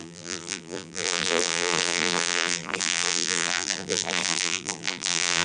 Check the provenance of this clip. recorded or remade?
remade